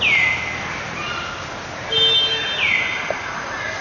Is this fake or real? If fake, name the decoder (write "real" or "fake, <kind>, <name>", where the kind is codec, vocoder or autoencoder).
real